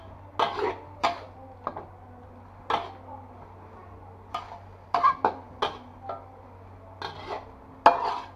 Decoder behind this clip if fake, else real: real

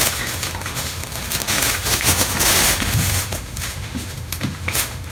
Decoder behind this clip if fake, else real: fake, autoencoder, DAC-VAE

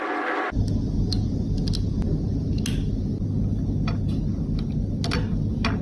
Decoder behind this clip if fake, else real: real